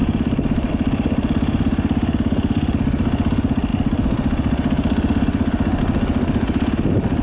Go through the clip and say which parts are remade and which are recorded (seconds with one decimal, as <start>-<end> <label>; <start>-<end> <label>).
0.0-7.2 recorded